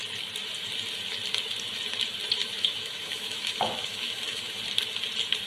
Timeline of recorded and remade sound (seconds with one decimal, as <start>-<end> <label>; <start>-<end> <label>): 0.0-2.4 recorded; 2.4-4.6 remade; 4.6-5.5 recorded